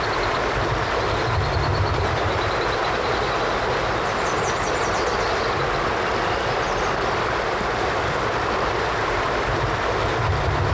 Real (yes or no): yes